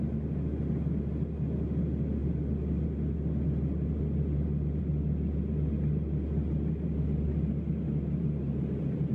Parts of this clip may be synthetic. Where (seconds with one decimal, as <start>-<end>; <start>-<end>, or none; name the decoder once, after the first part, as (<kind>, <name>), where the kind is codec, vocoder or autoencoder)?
none